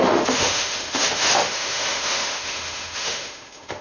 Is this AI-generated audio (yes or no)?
yes